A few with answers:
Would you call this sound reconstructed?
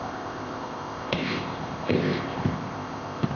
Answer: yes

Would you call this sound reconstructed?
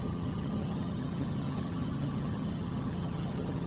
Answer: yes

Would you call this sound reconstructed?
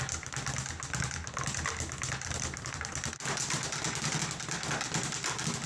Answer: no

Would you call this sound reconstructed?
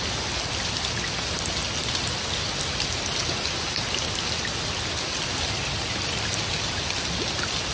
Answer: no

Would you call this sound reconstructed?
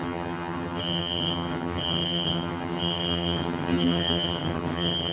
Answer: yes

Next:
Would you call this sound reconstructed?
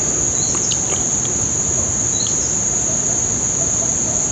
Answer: no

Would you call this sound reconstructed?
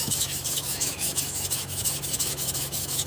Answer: yes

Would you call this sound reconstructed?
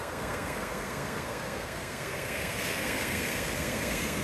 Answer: yes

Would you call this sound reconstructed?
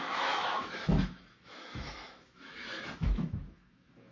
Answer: yes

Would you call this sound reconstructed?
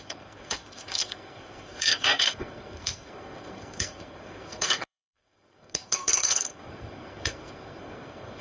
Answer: yes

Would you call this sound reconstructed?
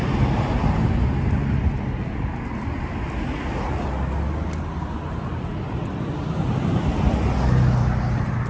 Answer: no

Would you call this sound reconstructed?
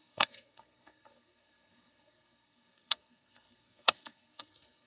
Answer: yes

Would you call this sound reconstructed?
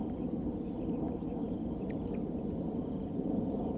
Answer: yes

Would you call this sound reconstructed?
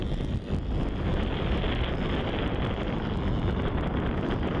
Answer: no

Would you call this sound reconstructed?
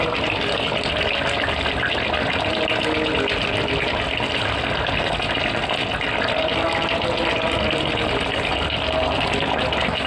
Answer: no